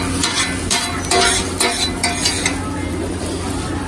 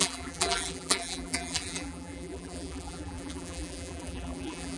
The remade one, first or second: second